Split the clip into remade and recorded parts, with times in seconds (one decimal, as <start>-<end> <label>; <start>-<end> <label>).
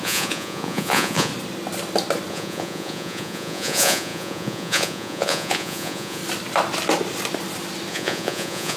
0.0-1.3 remade; 1.3-2.3 recorded; 2.3-6.2 remade; 6.2-7.9 recorded; 7.9-8.8 remade